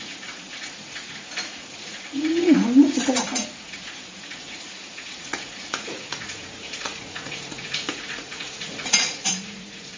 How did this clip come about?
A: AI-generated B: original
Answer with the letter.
A